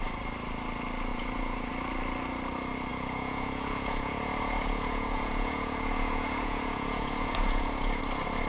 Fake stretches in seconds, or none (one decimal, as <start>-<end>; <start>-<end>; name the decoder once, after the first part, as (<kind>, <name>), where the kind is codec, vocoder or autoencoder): 1.1-1.7 (vocoder, Vocos); 2.9-8.0